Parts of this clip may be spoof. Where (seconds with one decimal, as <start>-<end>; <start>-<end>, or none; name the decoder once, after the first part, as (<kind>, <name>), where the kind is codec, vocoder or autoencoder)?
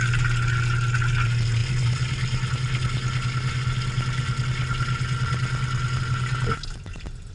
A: none